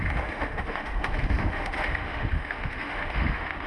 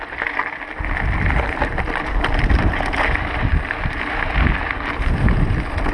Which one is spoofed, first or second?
first